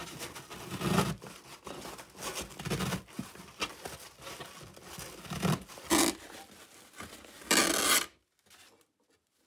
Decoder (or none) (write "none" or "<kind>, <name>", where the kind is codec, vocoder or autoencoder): none